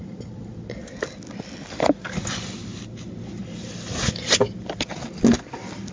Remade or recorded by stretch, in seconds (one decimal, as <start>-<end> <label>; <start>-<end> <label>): 0.0-5.9 recorded